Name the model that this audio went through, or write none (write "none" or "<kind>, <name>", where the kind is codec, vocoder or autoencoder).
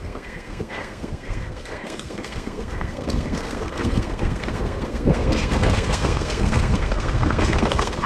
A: codec, SNAC